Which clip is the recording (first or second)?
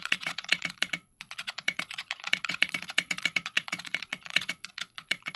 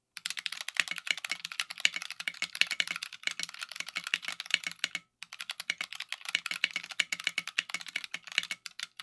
second